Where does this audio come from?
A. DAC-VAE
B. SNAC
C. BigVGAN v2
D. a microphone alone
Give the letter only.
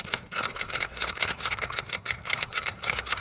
B